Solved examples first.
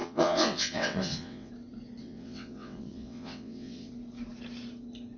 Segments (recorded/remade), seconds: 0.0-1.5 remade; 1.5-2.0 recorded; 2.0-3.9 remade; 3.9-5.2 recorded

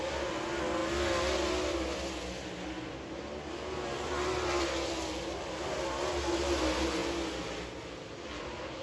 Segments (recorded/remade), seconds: 0.0-8.8 recorded